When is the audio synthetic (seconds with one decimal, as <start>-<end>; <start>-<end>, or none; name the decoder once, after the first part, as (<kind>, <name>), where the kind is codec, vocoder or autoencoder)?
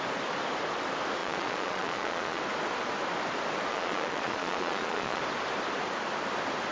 1.2-2.4 (vocoder, Vocos); 3.7-5.2